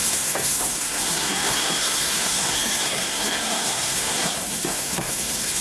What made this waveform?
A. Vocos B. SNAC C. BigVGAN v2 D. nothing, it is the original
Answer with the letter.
B